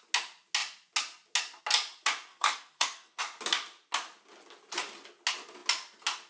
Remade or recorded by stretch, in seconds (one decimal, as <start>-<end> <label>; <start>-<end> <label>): 0.0-2.3 recorded; 2.3-3.2 remade; 3.2-6.3 recorded